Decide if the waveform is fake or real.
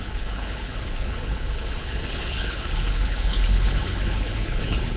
fake